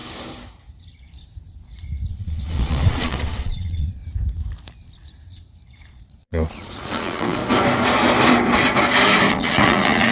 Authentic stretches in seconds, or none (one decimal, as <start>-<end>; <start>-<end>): 0.0-2.1; 4.0-5.9; 7.4-9.3